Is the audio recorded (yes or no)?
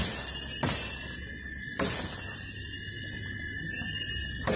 yes